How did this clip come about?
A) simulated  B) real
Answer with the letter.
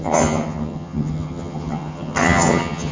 A